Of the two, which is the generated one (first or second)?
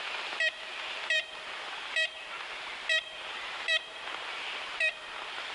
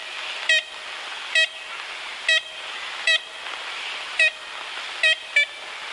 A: first